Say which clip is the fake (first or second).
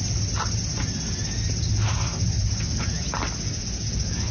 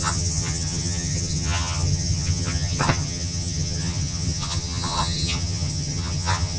second